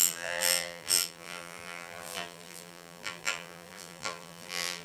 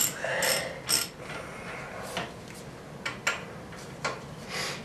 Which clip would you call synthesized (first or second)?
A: first